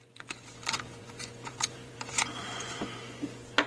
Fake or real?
fake